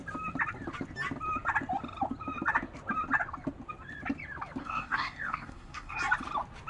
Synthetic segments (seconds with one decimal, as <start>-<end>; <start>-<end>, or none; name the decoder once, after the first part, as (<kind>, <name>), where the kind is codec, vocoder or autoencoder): 4.6-6.0 (codec, SNAC)